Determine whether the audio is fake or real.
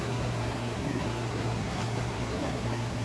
fake